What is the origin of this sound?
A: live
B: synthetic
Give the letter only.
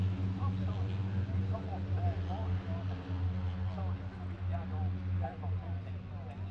A